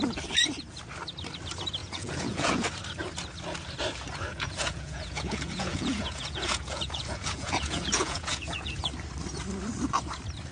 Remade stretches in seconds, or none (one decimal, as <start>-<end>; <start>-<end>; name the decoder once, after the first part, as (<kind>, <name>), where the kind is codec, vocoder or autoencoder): 1.8-2.6 (vocoder, Vocos); 4.3-8.8